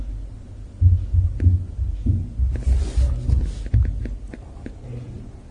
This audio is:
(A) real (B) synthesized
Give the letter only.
A